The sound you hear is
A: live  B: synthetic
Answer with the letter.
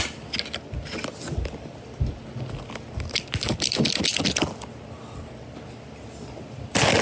A